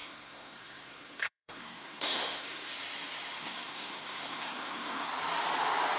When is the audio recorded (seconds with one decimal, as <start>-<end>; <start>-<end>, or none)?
2.7-3.4; 5.1-6.0